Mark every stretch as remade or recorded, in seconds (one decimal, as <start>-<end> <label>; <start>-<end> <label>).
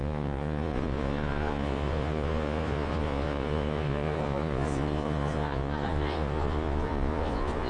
0.0-7.7 remade